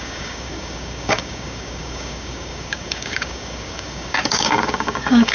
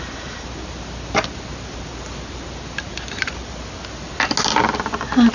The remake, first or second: first